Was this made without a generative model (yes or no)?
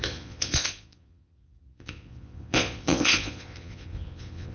no